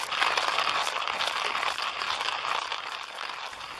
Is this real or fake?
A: real